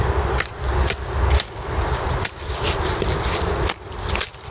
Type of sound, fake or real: real